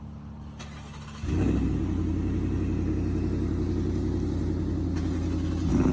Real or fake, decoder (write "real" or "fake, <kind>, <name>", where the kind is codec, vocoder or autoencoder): real